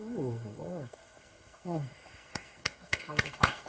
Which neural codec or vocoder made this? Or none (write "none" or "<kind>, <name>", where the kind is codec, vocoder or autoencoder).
codec, SNAC